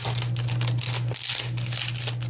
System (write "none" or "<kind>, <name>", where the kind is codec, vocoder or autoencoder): none